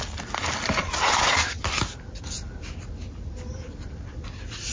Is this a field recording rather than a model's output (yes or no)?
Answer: yes